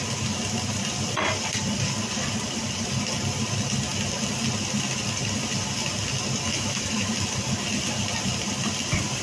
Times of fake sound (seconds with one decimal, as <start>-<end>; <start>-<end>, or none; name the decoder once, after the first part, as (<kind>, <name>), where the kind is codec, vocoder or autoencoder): 6.5-7.1 (autoencoder, DAC-VAE)